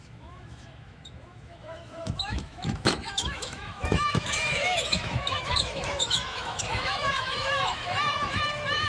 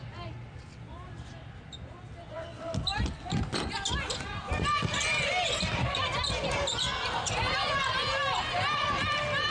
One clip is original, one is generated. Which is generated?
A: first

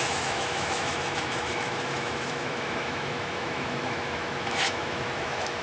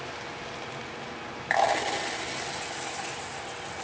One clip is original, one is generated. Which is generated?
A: first